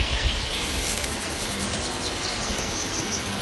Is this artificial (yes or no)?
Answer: yes